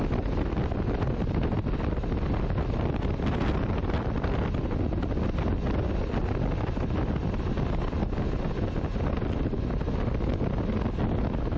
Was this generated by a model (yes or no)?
no